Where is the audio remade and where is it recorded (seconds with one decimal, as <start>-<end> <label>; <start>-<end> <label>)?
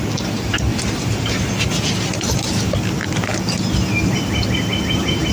0.0-5.3 recorded